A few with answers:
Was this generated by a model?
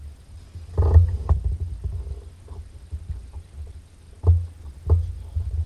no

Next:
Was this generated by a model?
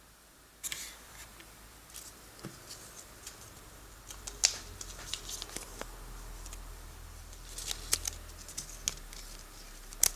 no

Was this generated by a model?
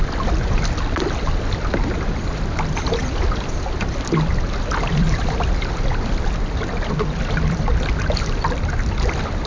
no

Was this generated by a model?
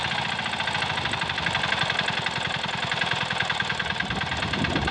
no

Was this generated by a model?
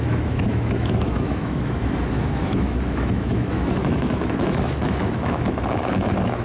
yes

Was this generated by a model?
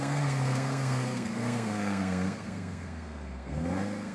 yes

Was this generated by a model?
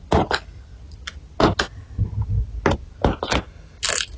no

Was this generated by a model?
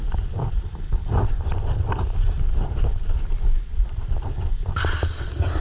no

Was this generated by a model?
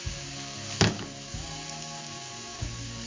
yes